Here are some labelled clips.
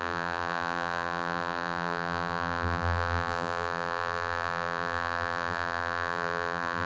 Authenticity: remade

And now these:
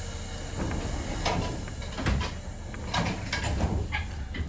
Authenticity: recorded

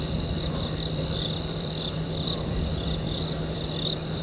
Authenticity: remade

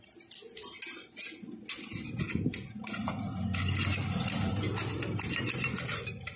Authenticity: recorded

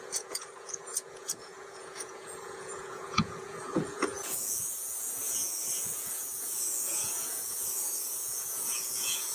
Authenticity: remade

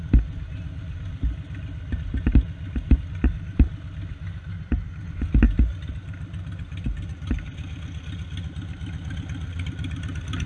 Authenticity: recorded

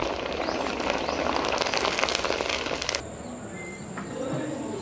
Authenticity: recorded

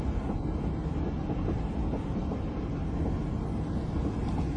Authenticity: recorded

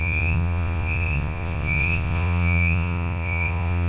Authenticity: remade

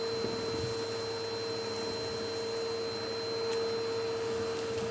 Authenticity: recorded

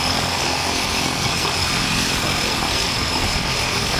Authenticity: remade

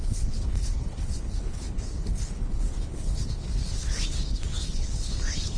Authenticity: remade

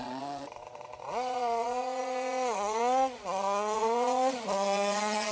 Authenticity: remade